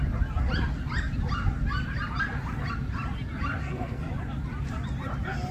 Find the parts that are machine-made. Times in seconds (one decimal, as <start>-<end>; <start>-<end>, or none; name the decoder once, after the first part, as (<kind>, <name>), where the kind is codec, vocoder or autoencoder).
3.6-4.1 (codec, SNAC)